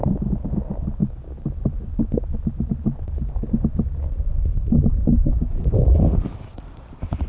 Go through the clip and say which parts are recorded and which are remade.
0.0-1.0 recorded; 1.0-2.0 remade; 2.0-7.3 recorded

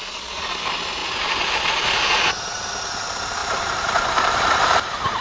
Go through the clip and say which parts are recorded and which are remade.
0.0-3.4 recorded; 3.4-4.6 remade; 4.6-5.2 recorded

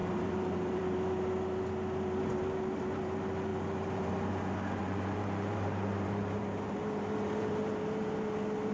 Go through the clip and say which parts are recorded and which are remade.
0.0-0.8 remade; 0.8-3.5 recorded; 3.5-4.1 remade; 4.1-4.8 recorded; 4.8-6.4 remade; 6.4-8.7 recorded

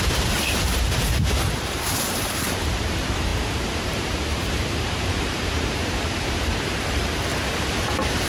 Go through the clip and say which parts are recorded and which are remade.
0.0-7.0 remade; 7.0-7.7 recorded; 7.7-8.3 remade